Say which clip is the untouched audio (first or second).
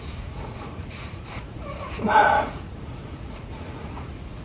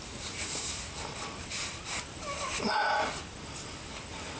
second